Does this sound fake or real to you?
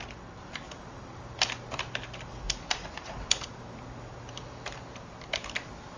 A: real